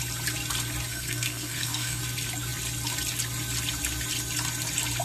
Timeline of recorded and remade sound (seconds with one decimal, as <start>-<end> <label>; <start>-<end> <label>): 0.0-0.9 recorded; 0.9-2.0 remade; 2.0-5.0 recorded